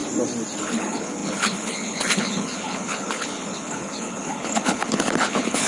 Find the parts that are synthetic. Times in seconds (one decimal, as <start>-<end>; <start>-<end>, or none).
0.6-5.7